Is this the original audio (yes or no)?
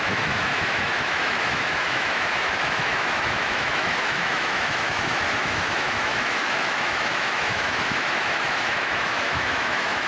no